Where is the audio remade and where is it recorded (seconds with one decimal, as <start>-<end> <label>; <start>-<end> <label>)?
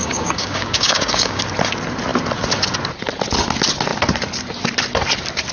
0.0-1.4 remade; 1.4-5.5 recorded